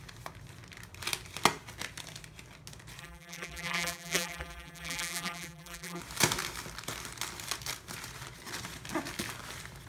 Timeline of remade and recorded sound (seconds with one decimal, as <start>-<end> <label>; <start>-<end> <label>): 0.0-3.0 recorded; 3.0-6.0 remade; 6.0-9.9 recorded